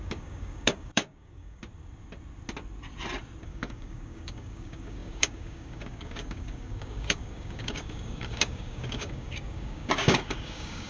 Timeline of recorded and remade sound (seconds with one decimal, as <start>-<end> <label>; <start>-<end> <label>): 0.0-1.6 remade; 1.6-3.4 recorded; 3.4-10.9 remade